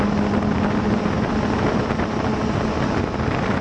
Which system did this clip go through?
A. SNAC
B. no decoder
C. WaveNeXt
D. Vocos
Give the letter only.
B